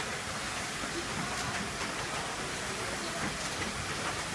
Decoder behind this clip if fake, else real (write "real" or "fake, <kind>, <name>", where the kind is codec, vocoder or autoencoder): fake, vocoder, BigVGAN v2